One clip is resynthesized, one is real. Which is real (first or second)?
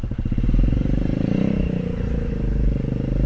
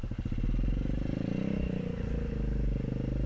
second